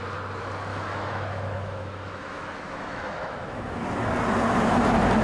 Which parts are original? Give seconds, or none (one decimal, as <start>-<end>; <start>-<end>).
0.0-0.7; 3.8-5.2